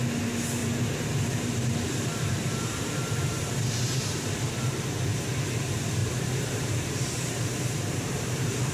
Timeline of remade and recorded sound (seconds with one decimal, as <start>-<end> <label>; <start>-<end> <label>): 0.0-0.6 recorded; 0.6-4.5 remade; 4.5-6.0 recorded; 6.0-8.7 remade